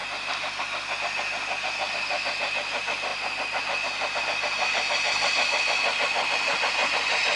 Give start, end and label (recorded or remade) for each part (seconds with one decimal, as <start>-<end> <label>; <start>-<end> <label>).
0.0-7.4 recorded